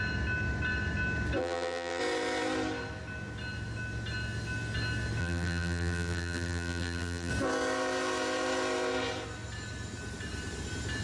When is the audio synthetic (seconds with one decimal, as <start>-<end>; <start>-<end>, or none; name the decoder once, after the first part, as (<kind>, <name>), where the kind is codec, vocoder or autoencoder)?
1.4-2.0 (vocoder, BigVGAN v2); 5.2-7.3